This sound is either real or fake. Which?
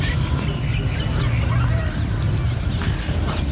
real